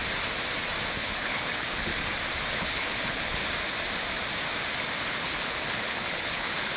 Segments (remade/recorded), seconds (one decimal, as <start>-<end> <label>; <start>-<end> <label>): 0.0-0.9 recorded; 0.9-1.9 remade; 1.9-2.5 recorded; 2.5-3.4 remade; 3.4-5.1 recorded; 5.1-6.8 remade